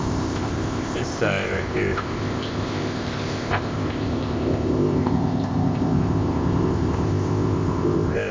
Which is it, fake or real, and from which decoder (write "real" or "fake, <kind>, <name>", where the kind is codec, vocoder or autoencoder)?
fake, codec, ZipCodec